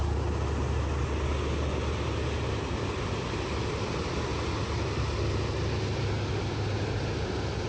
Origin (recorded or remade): recorded